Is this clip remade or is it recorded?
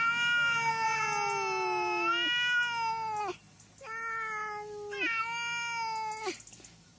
recorded